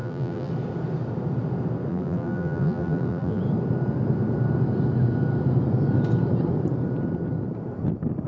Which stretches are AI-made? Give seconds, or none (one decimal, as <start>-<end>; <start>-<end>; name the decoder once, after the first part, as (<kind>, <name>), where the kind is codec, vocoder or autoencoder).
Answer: 0.0-0.5 (vocoder, BigVGAN v2); 1.9-3.4